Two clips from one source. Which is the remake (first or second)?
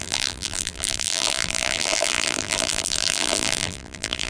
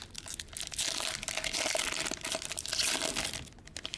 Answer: first